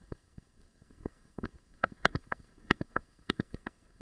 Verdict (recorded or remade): remade